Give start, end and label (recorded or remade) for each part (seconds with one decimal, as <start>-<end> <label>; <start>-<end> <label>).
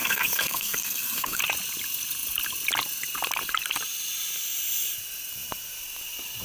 0.0-1.4 remade; 1.4-6.4 recorded